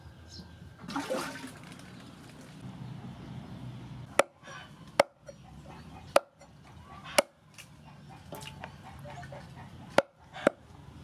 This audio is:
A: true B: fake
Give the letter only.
A